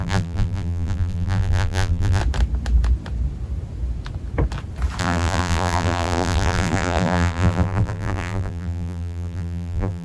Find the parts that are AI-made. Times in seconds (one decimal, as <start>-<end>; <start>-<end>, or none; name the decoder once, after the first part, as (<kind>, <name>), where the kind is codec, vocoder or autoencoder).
0.0-2.2 (vocoder, BigVGAN v2); 5.0-10.0